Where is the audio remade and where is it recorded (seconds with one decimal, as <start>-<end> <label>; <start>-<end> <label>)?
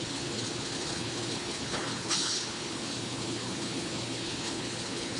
0.0-5.2 remade